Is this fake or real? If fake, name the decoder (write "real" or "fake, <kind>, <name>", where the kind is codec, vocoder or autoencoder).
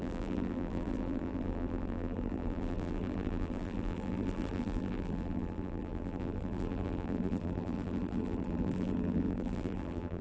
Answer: fake, vocoder, BigVGAN v2